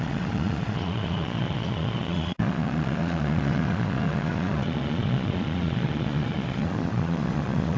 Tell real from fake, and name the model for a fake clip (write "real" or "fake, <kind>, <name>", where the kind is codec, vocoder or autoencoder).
fake, vocoder, Vocos